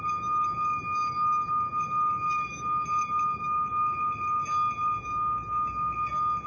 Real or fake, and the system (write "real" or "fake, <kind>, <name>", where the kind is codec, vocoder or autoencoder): real